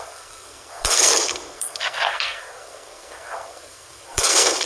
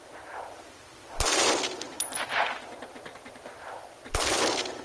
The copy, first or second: first